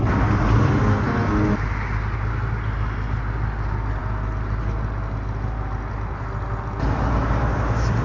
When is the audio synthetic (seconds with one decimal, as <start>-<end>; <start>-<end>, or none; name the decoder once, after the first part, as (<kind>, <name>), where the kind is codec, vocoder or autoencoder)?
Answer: none